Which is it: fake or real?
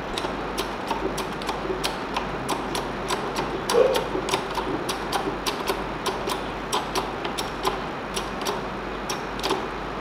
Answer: real